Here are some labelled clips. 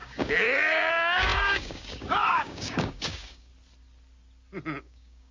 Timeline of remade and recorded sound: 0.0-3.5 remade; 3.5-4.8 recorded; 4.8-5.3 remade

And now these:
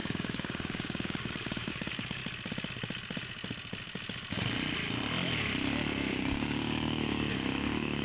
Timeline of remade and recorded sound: 0.0-2.2 remade; 2.2-5.9 recorded; 5.9-8.0 remade

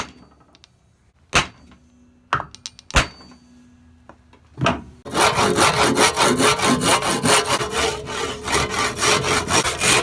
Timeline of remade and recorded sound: 0.0-10.0 recorded